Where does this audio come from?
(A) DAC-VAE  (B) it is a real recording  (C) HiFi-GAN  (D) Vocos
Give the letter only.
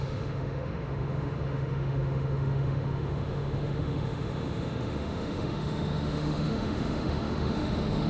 A